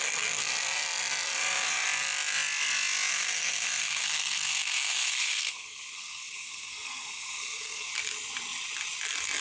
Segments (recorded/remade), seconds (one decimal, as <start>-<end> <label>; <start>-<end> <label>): 0.0-3.1 recorded; 3.1-7.9 remade; 7.9-9.4 recorded

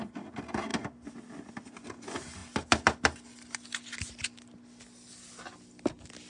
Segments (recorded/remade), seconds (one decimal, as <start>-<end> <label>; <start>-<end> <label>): 0.0-6.3 recorded

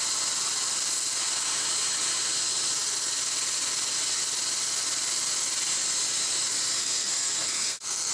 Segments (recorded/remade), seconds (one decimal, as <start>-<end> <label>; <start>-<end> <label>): 0.0-6.8 recorded; 6.8-8.1 remade

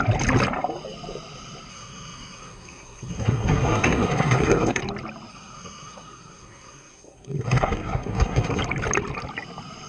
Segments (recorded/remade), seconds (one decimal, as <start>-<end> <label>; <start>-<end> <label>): 0.0-1.7 recorded; 1.7-4.8 remade; 4.8-5.3 recorded; 5.3-8.6 remade; 8.6-9.9 recorded

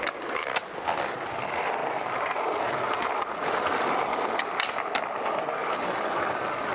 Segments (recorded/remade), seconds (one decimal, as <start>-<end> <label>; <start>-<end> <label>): 0.0-6.7 recorded